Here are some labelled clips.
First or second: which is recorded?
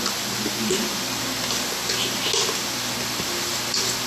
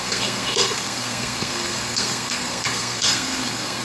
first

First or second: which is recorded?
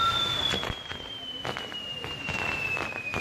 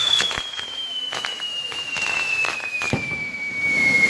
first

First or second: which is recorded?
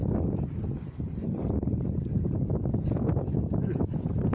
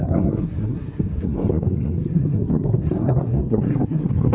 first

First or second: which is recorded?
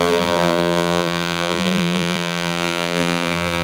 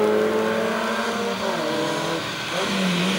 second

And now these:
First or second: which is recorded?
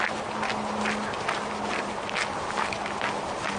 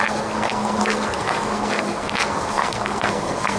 first